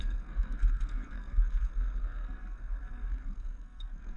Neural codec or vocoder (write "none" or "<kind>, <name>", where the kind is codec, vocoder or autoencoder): codec, SNAC